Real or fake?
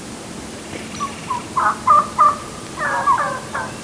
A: fake